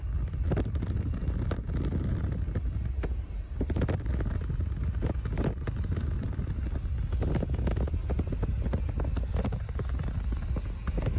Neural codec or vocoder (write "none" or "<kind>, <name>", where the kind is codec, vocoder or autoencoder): none